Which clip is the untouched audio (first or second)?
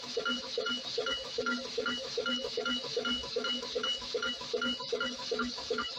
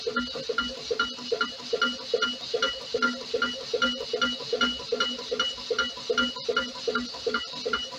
second